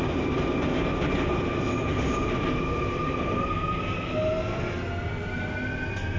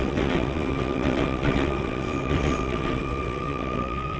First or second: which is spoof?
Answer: second